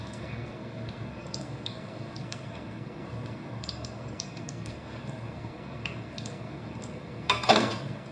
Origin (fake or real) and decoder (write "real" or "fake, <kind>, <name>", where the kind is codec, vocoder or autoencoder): fake, codec, SNAC